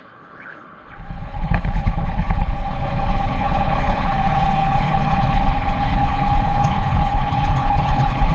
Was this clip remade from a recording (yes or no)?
yes